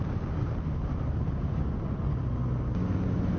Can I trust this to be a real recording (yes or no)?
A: yes